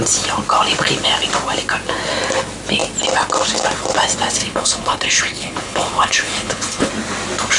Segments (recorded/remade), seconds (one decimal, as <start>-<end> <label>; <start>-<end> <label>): 0.0-4.4 recorded; 4.4-6.9 remade; 6.9-7.6 recorded